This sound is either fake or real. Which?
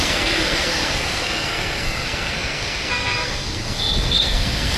fake